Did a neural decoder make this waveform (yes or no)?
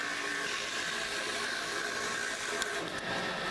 no